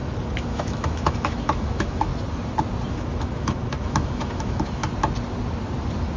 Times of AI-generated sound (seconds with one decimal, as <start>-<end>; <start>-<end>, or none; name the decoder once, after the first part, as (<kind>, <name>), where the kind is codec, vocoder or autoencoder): 0.0-2.1 (autoencoder, DAC-VAE); 2.9-4.8